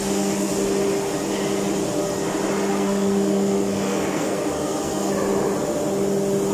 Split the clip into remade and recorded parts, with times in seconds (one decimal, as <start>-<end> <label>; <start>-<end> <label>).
0.0-0.5 remade; 0.5-2.7 recorded; 2.7-5.1 remade; 5.1-6.5 recorded